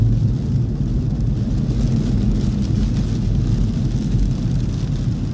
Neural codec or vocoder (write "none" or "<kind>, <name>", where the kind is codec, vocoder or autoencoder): none